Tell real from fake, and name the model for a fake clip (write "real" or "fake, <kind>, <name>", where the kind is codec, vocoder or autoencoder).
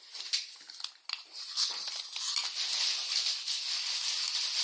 real